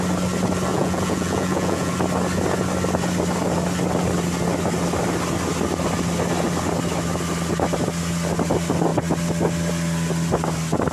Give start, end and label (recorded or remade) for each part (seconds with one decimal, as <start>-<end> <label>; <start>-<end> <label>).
0.0-0.7 recorded; 0.7-1.9 remade; 1.9-10.9 recorded